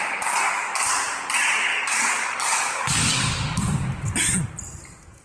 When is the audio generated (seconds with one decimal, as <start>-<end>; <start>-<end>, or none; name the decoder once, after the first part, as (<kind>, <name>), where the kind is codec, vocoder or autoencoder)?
1.7-3.6 (codec, DAC)